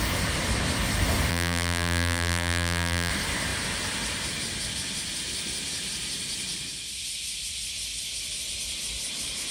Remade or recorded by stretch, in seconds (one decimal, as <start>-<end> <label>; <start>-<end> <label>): 0.0-1.3 recorded; 1.3-3.1 remade; 3.1-9.5 recorded